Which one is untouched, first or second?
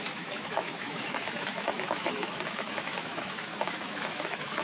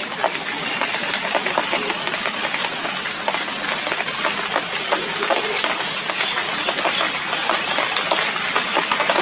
second